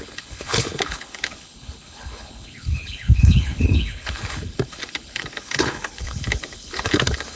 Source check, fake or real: fake